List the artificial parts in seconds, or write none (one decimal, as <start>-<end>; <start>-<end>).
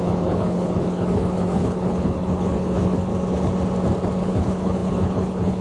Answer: 0.0-3.1; 4.2-5.6